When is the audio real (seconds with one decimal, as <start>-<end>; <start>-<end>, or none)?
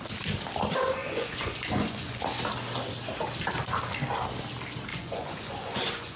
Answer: 0.0-1.0; 2.2-4.9